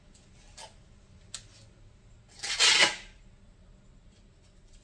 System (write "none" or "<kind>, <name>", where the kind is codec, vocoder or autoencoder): none